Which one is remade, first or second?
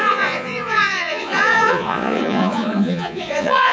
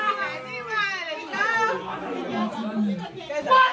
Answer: first